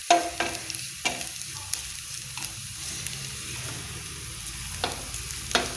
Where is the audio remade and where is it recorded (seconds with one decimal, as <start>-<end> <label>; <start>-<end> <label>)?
0.0-5.8 recorded